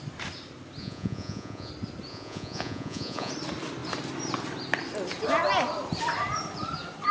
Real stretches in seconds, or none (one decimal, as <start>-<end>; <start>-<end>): 0.0-0.8; 1.7-2.1; 3.3-7.1